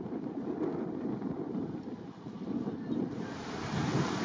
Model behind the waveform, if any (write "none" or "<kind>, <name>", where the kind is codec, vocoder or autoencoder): none